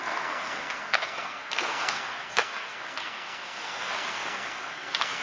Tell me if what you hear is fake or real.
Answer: fake